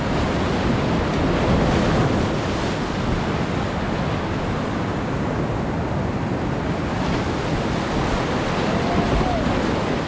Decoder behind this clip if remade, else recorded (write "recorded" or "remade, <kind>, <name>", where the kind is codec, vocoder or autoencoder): recorded